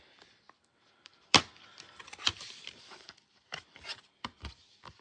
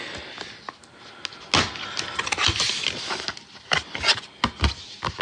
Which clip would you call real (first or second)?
second